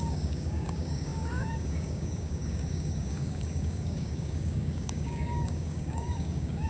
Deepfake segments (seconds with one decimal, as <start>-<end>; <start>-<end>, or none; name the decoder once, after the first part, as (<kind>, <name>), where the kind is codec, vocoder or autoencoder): 0.0-6.7 (codec, DAC)